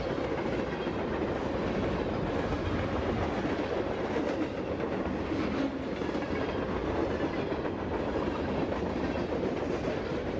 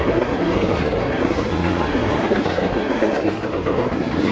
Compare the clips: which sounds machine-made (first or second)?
second